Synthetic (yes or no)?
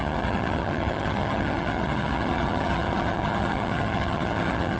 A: yes